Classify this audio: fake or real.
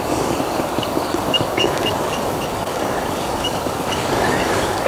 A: fake